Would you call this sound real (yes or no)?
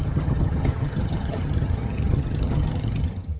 no